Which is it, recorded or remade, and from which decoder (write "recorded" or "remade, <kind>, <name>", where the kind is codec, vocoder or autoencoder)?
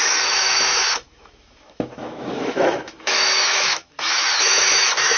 remade, autoencoder, DAC-VAE